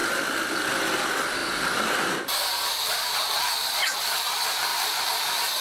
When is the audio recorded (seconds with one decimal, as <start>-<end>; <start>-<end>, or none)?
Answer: 0.0-1.4; 4.3-4.7